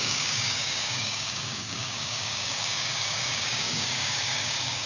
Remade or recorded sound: remade